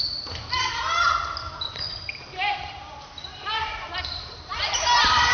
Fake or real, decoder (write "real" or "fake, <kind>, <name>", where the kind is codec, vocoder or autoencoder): fake, vocoder, BigVGAN v2